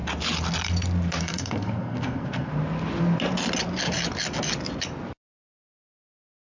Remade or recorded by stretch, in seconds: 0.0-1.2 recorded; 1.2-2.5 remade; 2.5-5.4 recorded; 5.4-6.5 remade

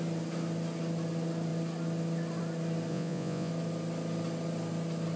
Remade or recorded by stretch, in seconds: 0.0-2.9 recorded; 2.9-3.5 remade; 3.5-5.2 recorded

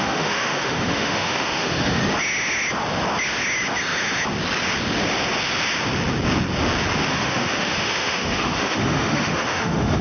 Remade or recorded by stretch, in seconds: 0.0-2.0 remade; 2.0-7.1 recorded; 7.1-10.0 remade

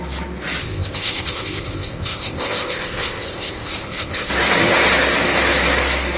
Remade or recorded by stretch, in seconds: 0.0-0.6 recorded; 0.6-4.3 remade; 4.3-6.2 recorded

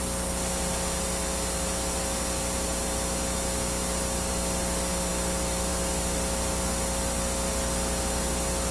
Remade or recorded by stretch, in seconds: 0.0-8.7 recorded

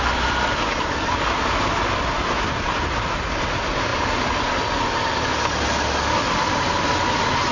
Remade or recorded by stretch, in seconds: 0.0-7.5 recorded

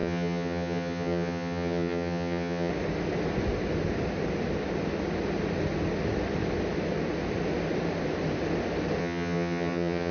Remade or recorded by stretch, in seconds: 0.0-2.7 remade; 2.7-9.0 recorded; 9.0-10.1 remade

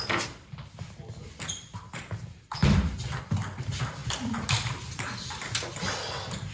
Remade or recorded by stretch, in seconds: 0.0-6.5 recorded